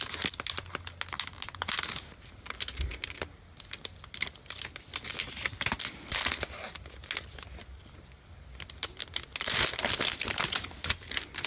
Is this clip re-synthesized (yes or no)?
no